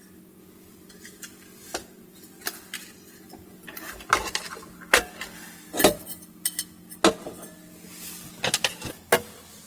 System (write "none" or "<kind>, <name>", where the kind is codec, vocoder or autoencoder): none